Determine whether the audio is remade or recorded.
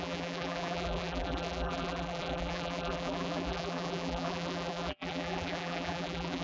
remade